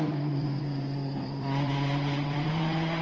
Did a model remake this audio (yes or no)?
yes